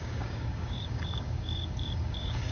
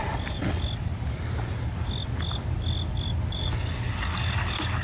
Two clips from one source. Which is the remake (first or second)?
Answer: first